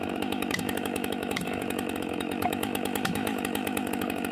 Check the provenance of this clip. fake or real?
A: fake